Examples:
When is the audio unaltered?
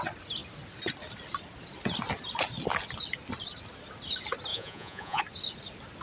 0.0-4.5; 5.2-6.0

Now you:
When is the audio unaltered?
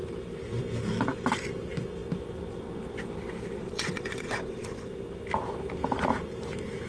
0.0-3.6; 4.9-6.9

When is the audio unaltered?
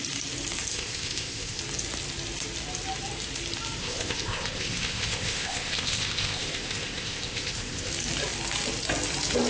0.0-0.7; 1.6-3.8; 7.9-9.5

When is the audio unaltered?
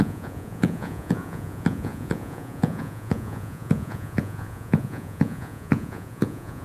none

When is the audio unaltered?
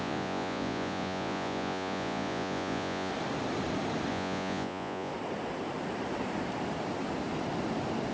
3.1-4.1; 5.1-8.1